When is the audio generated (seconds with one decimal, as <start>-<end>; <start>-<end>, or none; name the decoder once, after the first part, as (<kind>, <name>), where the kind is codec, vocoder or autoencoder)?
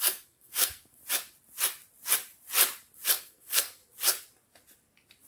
0.0-1.0 (codec, SNAC); 3.2-3.8